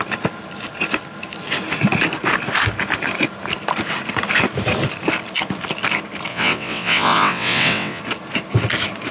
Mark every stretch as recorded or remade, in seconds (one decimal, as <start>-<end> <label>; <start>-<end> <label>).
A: 0.0-6.3 recorded; 6.3-8.0 remade; 8.0-9.1 recorded